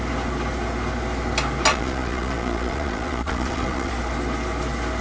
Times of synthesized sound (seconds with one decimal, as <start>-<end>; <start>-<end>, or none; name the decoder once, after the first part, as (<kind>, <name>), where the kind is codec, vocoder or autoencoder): 1.7-3.9 (vocoder, Vocos)